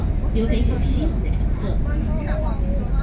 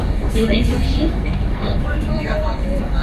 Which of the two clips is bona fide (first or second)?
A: first